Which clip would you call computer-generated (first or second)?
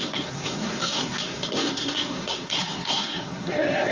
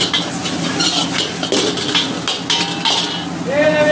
first